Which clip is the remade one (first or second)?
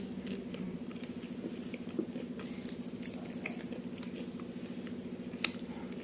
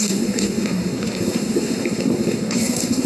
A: second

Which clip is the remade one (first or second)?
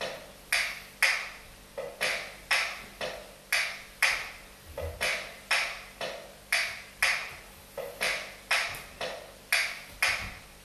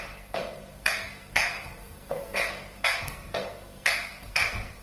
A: second